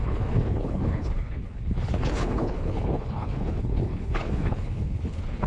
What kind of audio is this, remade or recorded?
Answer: remade